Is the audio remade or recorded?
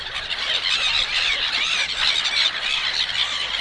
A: remade